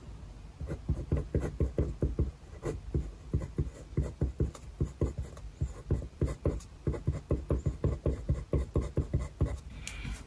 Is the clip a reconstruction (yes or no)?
no